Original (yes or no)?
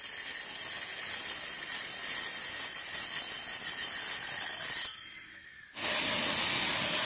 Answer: yes